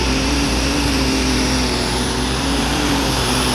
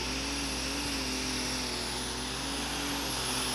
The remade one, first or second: first